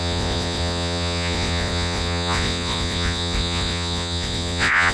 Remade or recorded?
remade